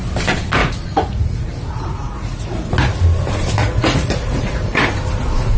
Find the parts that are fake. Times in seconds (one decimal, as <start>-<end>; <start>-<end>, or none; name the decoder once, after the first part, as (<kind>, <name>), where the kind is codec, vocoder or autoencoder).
0.6-2.7 (vocoder, Vocos); 3.6-4.8